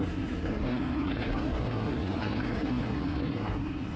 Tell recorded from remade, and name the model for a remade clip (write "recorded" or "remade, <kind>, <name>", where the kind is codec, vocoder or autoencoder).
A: remade, codec, SNAC